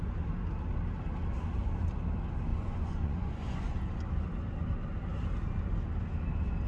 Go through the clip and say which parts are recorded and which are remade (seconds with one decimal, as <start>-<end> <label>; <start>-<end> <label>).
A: 0.0-2.5 recorded; 2.5-3.7 remade; 3.7-6.7 recorded